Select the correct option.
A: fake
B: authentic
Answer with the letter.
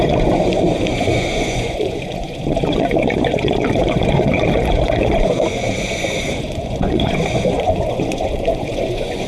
A